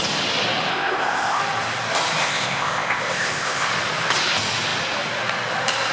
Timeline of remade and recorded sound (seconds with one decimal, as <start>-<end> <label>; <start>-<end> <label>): 0.0-0.7 recorded; 0.7-1.4 remade; 1.4-2.2 recorded; 2.2-3.7 remade; 3.7-5.9 recorded